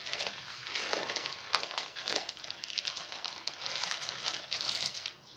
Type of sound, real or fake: fake